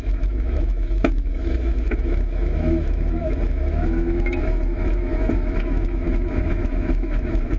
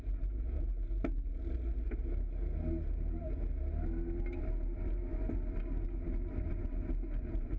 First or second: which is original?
second